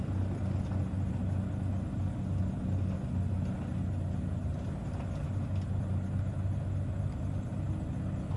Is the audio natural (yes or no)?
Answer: yes